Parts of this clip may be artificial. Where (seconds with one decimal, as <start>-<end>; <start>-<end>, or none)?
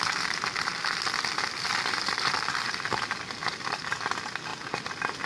none